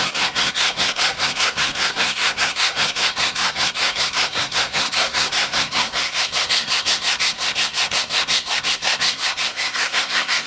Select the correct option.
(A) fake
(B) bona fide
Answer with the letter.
A